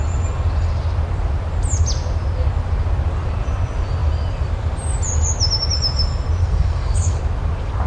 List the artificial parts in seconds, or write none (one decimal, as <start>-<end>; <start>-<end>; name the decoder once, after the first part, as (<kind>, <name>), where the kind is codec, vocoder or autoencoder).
6.4-7.2 (codec, SNAC)